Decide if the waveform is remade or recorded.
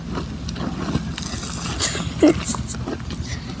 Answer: recorded